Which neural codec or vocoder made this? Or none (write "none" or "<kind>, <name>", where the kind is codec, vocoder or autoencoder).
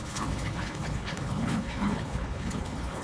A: codec, HILCodec